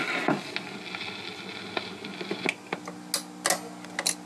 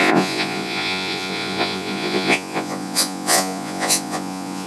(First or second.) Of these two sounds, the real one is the first